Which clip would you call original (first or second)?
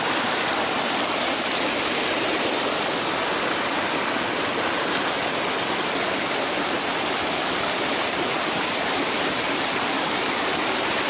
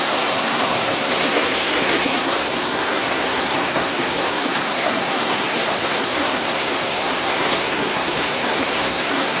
first